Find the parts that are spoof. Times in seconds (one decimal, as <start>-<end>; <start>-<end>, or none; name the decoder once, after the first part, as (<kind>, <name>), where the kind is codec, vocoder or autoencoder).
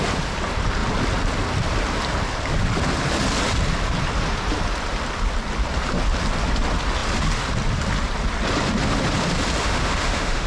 9.6-10.5 (autoencoder, DAC-VAE)